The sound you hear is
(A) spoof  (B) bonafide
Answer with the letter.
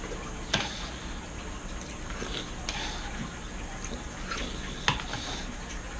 B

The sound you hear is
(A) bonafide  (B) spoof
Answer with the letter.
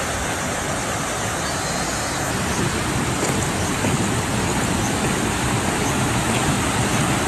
A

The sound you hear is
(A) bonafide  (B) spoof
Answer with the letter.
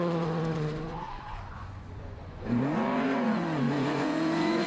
B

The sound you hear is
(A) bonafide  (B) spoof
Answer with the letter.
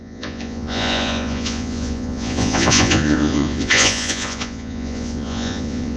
B